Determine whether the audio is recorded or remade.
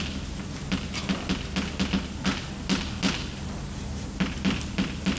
recorded